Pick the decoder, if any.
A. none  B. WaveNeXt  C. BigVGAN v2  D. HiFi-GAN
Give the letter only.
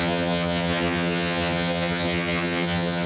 D